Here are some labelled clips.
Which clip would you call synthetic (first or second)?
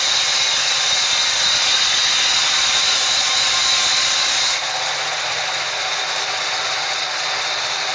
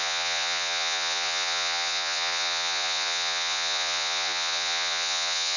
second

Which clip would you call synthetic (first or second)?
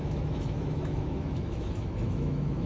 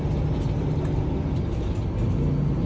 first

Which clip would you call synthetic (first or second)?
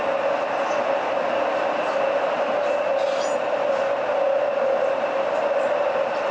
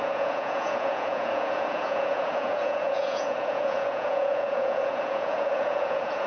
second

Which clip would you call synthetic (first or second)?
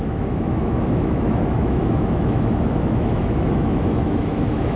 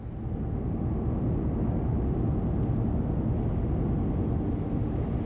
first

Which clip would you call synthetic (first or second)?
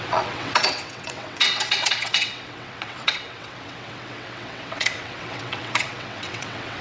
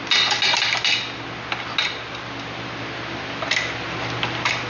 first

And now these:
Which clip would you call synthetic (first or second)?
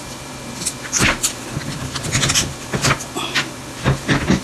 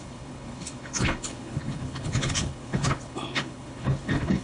second